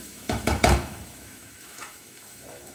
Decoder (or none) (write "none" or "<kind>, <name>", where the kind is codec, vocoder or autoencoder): autoencoder, DAC-VAE